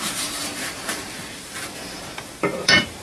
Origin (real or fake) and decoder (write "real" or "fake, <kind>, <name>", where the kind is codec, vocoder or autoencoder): fake, vocoder, BigVGAN v2